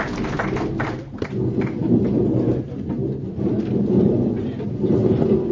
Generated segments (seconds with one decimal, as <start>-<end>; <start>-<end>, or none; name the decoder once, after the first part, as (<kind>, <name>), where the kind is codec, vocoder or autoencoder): 1.8-2.8 (vocoder, BigVGAN v2)